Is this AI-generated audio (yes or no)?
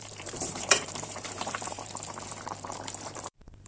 yes